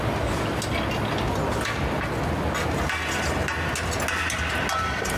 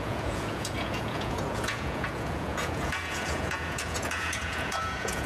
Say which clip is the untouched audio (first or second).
first